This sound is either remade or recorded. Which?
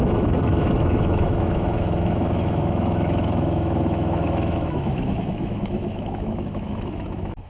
remade